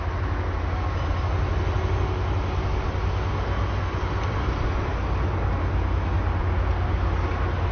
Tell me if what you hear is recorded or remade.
recorded